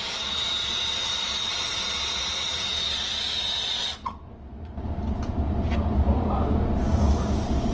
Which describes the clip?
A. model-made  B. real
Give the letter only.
B